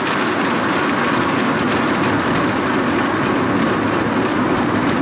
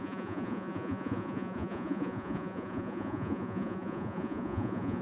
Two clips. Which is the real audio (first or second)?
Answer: first